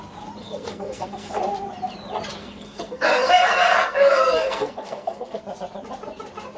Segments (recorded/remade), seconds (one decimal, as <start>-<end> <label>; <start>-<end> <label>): 0.0-0.4 recorded; 0.4-1.4 remade; 1.4-2.4 recorded; 2.4-5.4 remade; 5.4-6.6 recorded

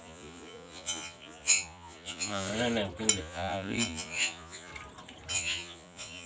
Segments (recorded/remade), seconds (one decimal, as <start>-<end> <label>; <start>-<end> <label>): 0.0-2.5 remade; 2.5-3.2 recorded; 3.2-4.7 remade; 4.7-5.3 recorded; 5.3-6.3 remade

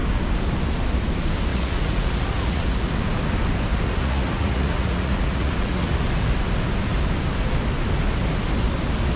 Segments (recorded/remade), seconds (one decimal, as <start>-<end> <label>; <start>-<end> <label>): 0.0-1.5 recorded; 1.5-2.9 remade; 2.9-3.7 recorded; 3.7-6.0 remade; 6.0-9.2 recorded